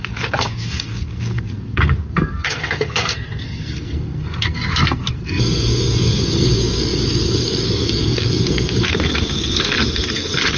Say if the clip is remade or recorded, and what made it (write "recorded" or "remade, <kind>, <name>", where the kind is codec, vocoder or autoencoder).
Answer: remade, codec, SNAC